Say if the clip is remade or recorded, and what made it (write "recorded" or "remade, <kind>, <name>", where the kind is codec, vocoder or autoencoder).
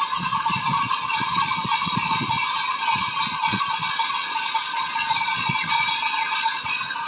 remade, vocoder, Vocos